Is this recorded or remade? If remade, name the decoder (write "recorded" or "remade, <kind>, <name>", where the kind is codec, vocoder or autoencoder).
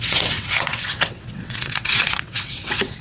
remade, vocoder, WaveNeXt